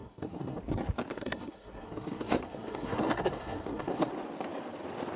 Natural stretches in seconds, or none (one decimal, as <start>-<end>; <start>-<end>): 0.6-1.1; 4.1-5.2